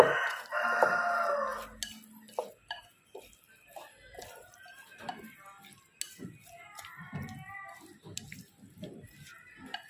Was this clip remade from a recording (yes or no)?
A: no